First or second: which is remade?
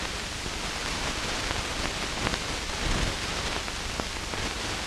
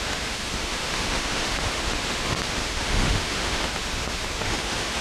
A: second